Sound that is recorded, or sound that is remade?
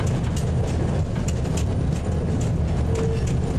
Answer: recorded